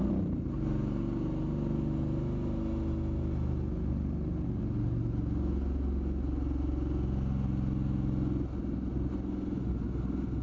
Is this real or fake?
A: real